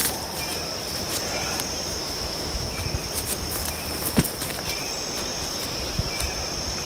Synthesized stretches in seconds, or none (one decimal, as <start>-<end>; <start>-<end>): 2.0-2.8